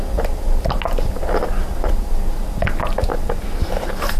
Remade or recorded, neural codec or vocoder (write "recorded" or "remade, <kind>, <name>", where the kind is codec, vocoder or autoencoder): recorded